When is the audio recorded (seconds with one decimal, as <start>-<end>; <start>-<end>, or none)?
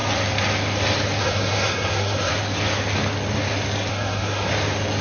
0.0-1.2; 2.3-3.9; 4.5-5.0